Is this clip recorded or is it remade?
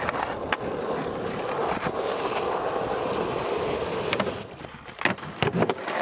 recorded